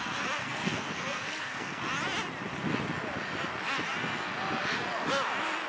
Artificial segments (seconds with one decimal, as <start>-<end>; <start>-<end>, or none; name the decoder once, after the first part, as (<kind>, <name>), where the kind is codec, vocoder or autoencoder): 0.4-1.8 (codec, SNAC)